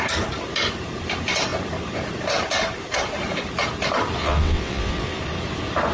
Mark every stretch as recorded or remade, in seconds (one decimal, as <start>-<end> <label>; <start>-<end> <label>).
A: 0.0-4.2 recorded; 4.2-5.2 remade; 5.2-5.9 recorded